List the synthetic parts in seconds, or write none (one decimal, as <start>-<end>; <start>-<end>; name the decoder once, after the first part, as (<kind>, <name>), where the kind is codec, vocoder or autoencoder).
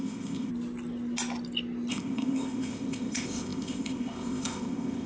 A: 0.0-0.5 (codec, ZipCodec); 1.9-5.1